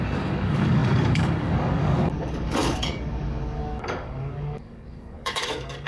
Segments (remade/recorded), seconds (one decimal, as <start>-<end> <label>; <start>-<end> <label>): 0.0-5.9 remade